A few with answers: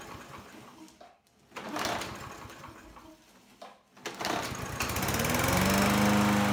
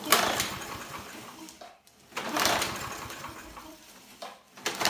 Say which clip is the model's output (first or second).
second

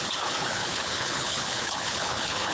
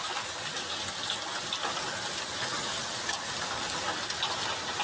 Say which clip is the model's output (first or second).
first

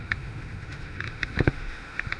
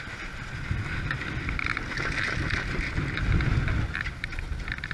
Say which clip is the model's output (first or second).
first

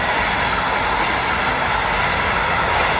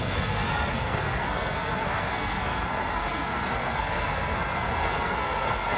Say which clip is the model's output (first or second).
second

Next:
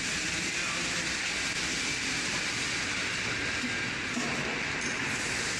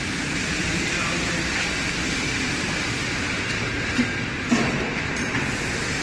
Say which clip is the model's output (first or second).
second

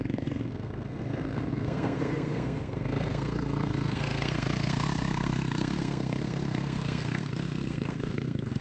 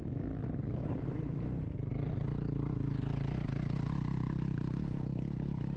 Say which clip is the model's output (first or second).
first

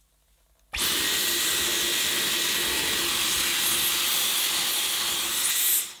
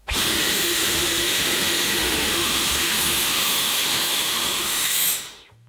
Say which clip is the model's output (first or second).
second